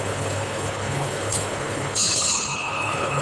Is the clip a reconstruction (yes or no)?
yes